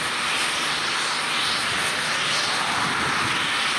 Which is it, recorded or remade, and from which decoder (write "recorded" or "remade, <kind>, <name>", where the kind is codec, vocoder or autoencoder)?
recorded